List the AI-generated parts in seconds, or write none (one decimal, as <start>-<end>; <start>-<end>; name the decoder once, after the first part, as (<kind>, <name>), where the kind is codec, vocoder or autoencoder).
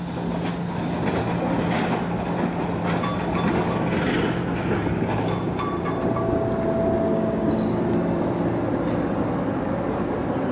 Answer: 7.1-7.8 (codec, DAC)